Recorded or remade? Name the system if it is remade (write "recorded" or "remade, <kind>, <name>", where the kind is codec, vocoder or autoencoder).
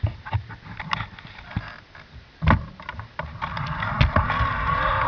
recorded